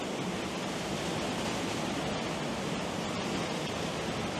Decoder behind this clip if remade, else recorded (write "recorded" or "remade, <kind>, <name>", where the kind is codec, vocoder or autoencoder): recorded